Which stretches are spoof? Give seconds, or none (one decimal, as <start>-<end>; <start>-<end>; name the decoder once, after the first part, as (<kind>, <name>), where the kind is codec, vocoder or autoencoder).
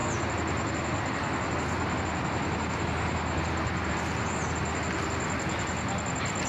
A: none